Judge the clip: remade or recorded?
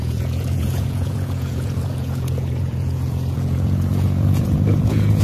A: remade